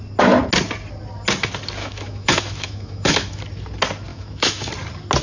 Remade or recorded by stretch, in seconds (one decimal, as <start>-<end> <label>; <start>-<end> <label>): 0.0-1.8 recorded; 1.8-3.4 remade; 3.4-4.1 recorded; 4.1-4.7 remade; 4.7-5.2 recorded